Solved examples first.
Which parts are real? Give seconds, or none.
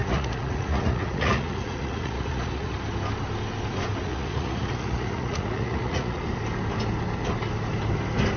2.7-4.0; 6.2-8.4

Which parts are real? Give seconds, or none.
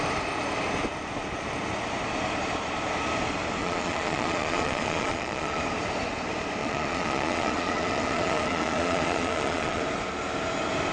0.0-3.6; 5.6-6.6; 9.8-10.9